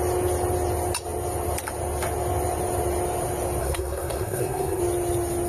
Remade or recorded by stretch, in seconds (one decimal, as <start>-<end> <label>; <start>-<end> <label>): 0.0-3.6 recorded; 3.6-4.8 remade; 4.8-5.5 recorded